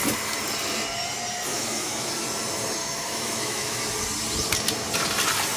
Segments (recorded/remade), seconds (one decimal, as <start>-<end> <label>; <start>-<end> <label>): 0.0-1.5 recorded; 1.5-2.1 remade; 2.1-2.8 recorded; 2.8-3.8 remade; 3.8-5.6 recorded